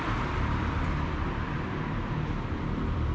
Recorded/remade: remade